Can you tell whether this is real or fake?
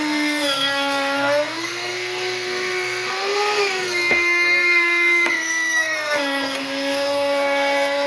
fake